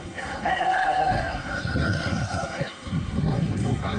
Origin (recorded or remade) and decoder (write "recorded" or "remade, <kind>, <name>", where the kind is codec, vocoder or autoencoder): remade, codec, SNAC